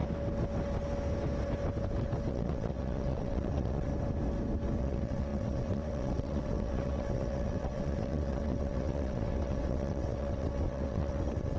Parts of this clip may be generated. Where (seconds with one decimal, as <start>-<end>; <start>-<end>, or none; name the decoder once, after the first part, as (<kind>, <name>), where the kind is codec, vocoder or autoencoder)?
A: 2.3-3.9 (vocoder, WaveNeXt); 4.8-11.6